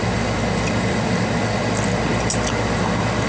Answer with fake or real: real